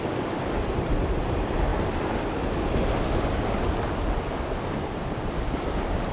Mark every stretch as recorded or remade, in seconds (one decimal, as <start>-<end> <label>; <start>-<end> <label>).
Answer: 0.0-6.1 recorded